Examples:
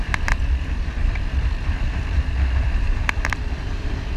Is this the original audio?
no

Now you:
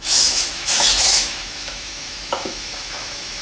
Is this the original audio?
no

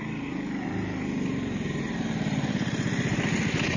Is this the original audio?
yes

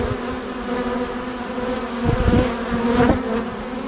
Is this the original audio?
yes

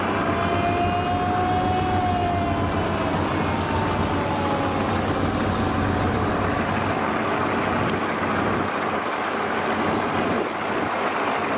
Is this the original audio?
yes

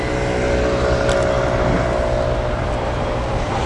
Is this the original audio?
yes